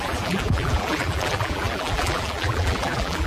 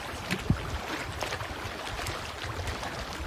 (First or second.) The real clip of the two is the second